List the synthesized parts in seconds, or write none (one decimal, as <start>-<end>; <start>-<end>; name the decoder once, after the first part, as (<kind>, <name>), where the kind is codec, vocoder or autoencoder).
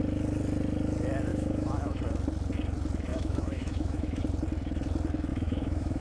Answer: 1.3-2.0 (autoencoder, DAC-VAE); 3.1-4.2; 5.3-6.0